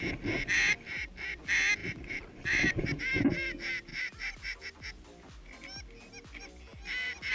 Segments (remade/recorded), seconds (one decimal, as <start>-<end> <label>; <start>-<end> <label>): 0.0-1.8 recorded; 1.8-3.0 remade; 3.0-3.9 recorded; 3.9-4.6 remade; 4.6-7.3 recorded